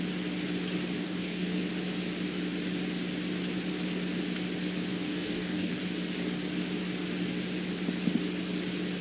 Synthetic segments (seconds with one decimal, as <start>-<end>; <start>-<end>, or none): 1.0-1.6; 4.9-5.7

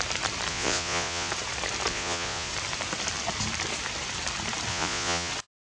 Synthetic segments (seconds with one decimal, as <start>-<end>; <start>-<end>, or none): 0.5-1.3; 1.9-2.5; 4.7-5.3

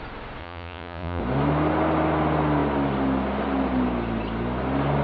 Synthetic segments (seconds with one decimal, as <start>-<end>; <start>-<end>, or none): 0.4-1.2

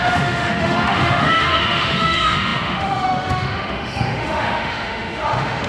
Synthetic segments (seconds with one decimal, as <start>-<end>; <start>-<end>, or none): 0.0-5.7

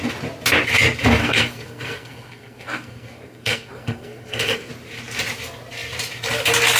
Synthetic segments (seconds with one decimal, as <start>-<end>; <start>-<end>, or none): 1.2-4.7

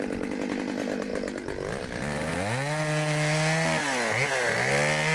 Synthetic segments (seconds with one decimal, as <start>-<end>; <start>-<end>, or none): none